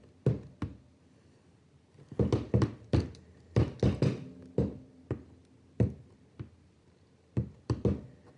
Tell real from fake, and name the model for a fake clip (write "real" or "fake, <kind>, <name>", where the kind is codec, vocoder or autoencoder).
real